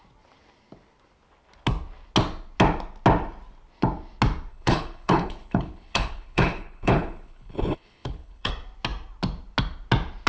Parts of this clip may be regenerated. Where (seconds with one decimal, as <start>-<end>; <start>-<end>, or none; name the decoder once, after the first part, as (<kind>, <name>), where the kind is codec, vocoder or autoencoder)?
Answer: 4.5-8.5 (codec, HILCodec)